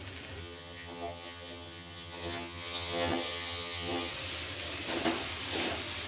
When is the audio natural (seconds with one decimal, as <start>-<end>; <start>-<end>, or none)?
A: 0.0-0.4; 4.1-6.1